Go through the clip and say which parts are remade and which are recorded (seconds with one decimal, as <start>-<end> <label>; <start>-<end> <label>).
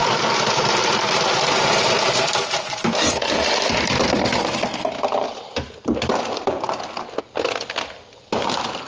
0.0-8.9 remade